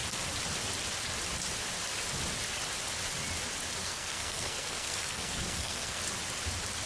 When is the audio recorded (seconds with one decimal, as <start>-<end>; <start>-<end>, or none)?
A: 0.0-3.8; 6.0-6.9